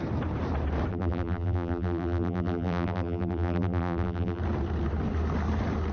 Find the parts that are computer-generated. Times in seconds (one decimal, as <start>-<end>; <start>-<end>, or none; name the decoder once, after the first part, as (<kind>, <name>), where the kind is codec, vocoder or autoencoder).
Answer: 0.9-4.4 (vocoder, BigVGAN v2)